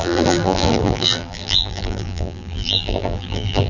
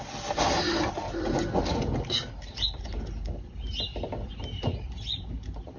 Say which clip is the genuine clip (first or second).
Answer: second